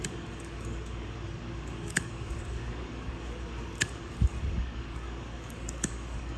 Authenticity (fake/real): fake